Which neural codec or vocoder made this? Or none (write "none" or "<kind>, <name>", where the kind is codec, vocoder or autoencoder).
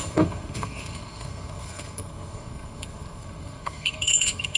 codec, SNAC